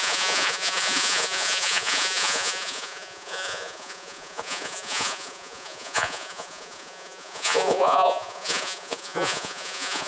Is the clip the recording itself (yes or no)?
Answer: no